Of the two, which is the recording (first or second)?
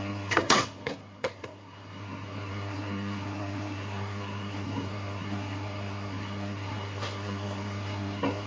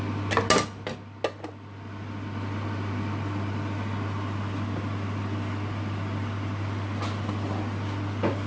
second